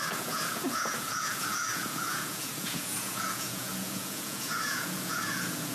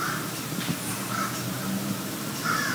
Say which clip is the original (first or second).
second